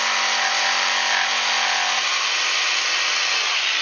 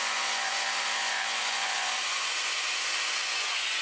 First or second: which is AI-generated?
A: second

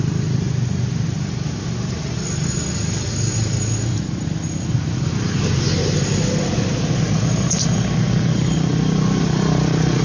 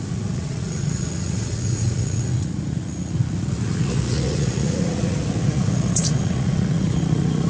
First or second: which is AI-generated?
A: second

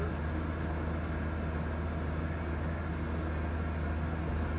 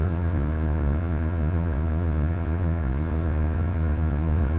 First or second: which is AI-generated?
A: second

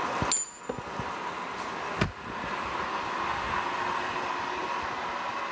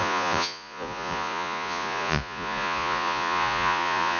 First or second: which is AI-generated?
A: second